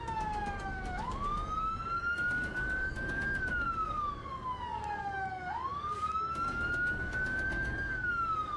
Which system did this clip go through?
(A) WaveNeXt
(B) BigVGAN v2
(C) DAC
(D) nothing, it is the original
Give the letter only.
C